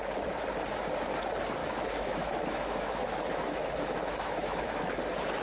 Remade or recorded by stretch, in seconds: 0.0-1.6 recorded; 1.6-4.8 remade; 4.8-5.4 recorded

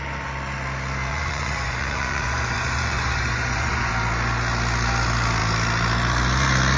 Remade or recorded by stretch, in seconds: 0.0-1.1 recorded; 1.1-3.9 remade; 3.9-6.8 recorded